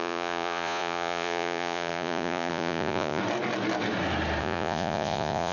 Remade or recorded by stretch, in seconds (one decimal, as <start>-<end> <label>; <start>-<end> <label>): 0.0-3.2 remade; 3.2-4.4 recorded; 4.4-5.5 remade